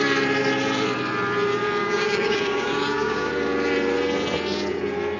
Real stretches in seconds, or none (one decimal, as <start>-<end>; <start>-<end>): 0.0-1.8; 3.3-5.2